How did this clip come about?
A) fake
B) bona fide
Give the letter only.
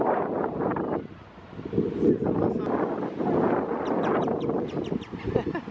B